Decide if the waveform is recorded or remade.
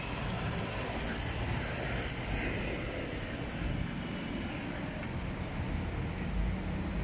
recorded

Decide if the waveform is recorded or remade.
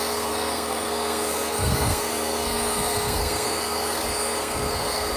remade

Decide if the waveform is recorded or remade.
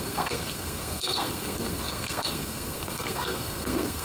remade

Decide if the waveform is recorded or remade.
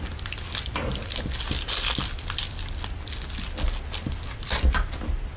recorded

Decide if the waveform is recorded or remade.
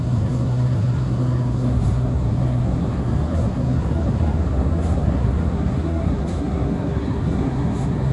remade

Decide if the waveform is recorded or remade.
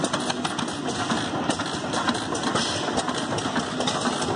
recorded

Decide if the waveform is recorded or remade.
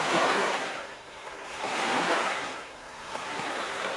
remade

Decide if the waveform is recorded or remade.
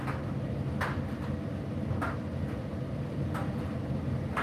recorded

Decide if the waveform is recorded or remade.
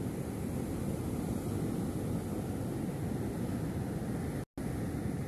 recorded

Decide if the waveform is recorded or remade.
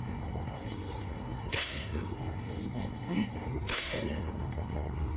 remade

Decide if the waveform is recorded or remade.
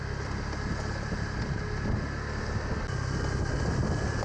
recorded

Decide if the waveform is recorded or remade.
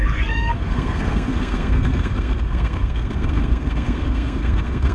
remade